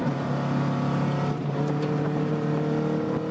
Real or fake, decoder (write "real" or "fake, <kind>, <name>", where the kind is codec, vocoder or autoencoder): real